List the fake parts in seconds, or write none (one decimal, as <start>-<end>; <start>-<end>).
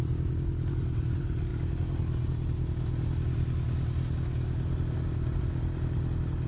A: none